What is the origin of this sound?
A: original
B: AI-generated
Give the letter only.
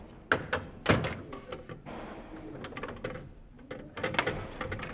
A